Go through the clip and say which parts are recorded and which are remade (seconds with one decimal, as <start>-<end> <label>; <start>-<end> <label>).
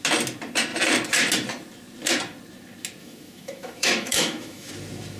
0.0-3.0 recorded; 3.0-4.7 remade; 4.7-5.2 recorded